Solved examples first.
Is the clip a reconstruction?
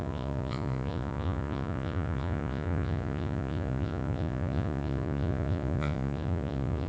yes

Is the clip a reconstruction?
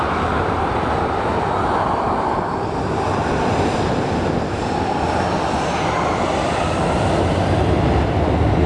no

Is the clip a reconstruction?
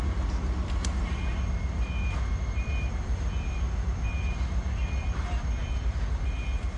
yes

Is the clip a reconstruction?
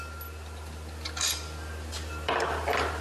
no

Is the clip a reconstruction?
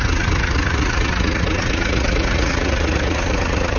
yes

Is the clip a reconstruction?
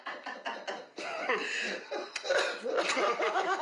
no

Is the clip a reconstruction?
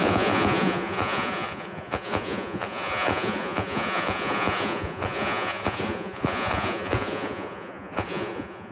yes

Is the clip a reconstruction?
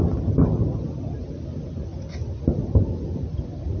no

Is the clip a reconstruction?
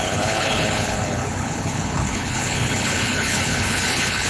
yes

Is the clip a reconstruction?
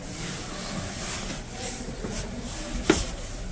no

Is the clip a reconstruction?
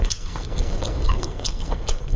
yes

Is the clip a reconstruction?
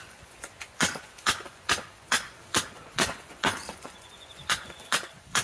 yes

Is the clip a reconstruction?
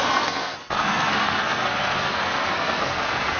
yes